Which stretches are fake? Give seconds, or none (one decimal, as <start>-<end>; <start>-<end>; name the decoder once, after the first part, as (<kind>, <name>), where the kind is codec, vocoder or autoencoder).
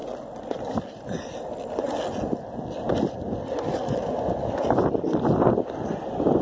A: none